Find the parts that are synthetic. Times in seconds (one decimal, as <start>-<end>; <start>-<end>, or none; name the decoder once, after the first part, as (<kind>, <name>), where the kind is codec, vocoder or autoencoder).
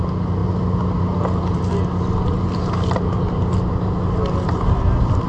none